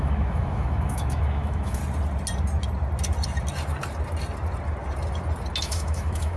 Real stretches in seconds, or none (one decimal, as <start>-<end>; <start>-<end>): 1.8-5.6